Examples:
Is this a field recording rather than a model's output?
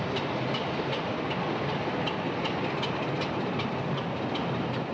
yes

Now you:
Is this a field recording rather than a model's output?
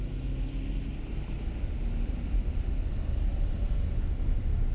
yes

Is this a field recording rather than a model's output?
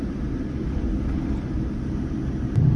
yes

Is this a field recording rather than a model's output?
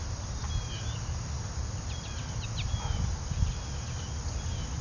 yes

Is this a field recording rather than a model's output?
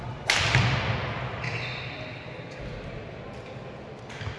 yes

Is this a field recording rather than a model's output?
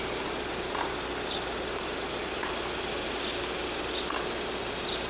yes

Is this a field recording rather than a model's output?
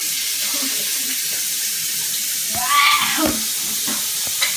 yes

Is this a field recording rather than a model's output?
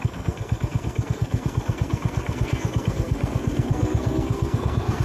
no